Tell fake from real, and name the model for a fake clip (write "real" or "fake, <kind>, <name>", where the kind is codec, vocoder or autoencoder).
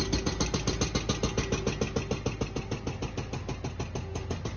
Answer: real